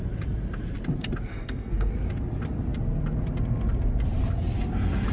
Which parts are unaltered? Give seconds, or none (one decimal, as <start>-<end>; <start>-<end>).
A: 0.0-1.3; 1.9-5.1